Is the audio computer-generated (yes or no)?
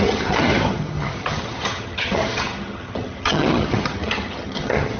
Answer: yes